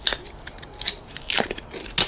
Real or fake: real